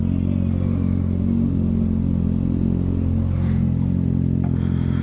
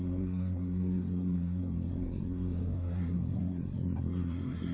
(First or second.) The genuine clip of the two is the first